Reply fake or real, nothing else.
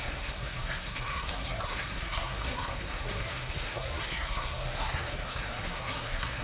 fake